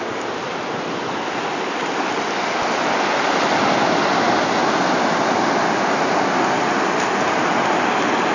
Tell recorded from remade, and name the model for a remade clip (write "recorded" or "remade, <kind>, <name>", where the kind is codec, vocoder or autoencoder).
recorded